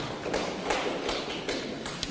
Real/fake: real